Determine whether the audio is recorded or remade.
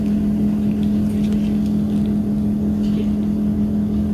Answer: recorded